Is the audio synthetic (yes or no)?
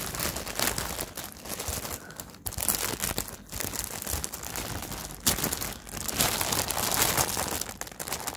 no